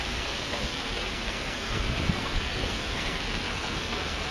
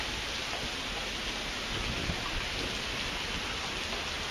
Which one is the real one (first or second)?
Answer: second